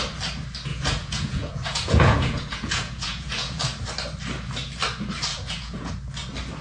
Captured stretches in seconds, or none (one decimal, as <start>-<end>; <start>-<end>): 0.0-0.7; 3.6-5.3; 5.9-6.6